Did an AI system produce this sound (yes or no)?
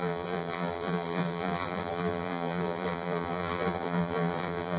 yes